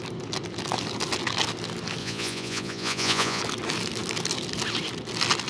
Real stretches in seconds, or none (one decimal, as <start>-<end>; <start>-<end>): 0.0-2.0; 3.4-5.5

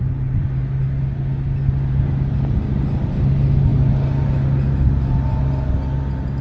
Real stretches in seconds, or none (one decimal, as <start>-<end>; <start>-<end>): 0.0-6.4

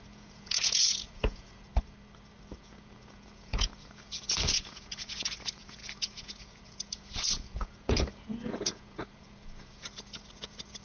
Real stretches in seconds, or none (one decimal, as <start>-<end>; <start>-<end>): 1.7-2.5

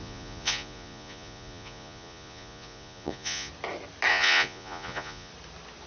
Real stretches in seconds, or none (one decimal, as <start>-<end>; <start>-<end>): 3.5-4.1; 5.3-5.9

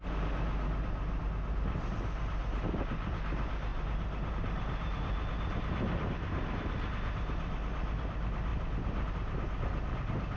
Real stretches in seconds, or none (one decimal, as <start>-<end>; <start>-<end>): 0.0-10.4